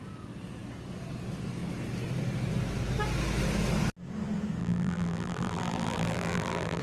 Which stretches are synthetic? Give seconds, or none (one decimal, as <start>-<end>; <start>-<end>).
4.6-6.8